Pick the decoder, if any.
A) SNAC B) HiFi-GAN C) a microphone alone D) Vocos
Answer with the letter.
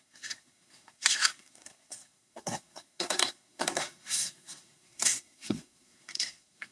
A